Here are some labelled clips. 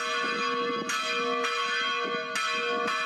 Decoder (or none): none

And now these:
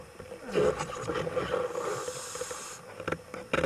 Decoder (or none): none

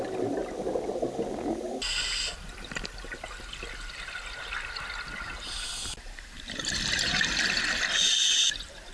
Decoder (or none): none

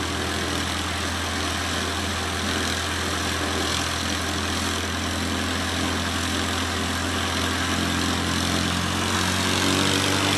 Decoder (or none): none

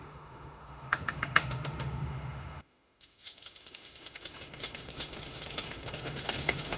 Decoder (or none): autoencoder, DAC-VAE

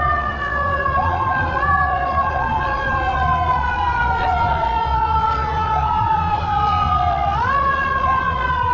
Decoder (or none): vocoder, Vocos